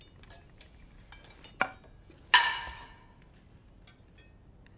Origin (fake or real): real